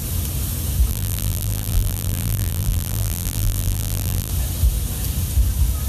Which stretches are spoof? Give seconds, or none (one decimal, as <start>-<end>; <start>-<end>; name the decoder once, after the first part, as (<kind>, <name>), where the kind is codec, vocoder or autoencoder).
0.9-4.3 (vocoder, BigVGAN v2)